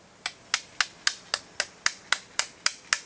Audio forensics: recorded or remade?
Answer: recorded